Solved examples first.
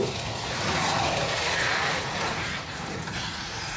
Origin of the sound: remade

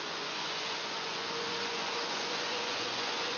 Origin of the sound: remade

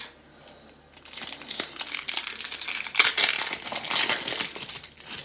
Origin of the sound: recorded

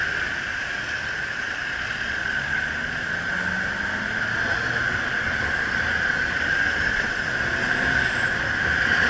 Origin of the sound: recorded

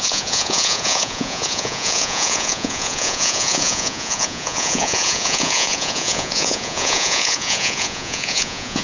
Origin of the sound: remade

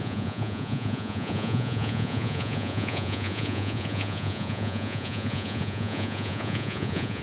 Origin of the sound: remade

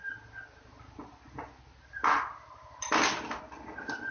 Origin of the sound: recorded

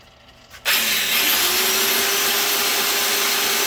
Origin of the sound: recorded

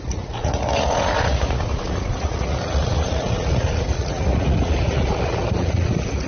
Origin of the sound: remade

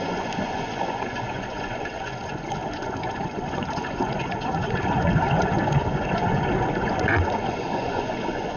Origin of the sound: remade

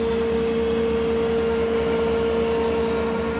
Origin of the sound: recorded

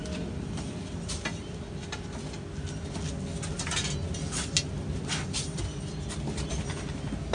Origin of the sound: recorded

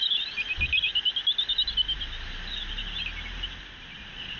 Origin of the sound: recorded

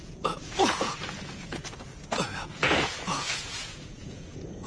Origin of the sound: remade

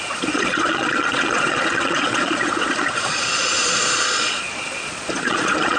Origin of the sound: remade